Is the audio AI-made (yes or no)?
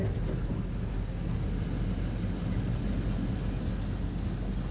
no